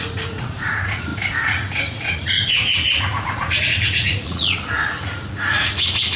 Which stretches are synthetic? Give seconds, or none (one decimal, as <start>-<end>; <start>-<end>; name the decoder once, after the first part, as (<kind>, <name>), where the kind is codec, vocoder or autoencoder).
0.0-6.2 (vocoder, Vocos)